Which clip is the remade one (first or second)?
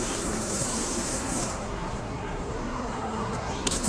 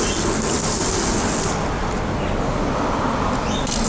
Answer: first